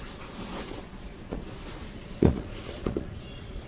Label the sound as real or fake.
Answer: fake